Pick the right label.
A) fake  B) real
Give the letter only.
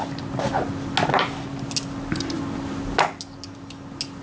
B